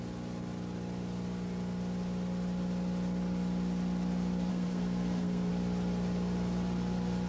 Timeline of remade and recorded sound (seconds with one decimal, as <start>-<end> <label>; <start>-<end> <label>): 0.0-4.5 recorded; 4.5-5.5 remade; 5.5-7.3 recorded